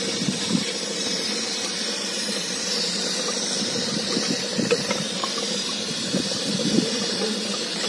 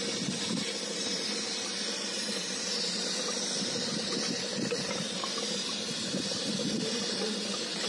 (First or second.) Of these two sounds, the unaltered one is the second